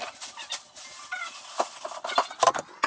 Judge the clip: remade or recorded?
recorded